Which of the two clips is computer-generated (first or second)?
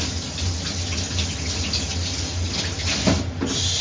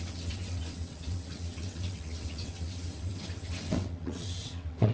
second